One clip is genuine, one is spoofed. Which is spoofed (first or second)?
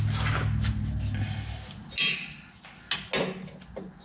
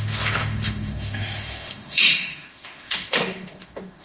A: second